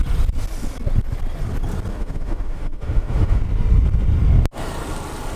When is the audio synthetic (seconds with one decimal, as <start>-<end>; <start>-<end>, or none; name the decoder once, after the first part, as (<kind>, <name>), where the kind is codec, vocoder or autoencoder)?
1.9-3.4 (autoencoder, DAC-VAE)